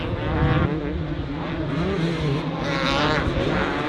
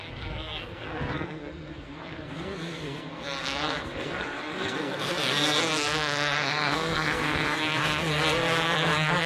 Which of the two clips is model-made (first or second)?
second